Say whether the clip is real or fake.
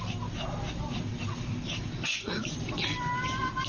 real